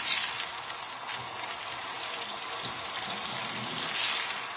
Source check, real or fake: real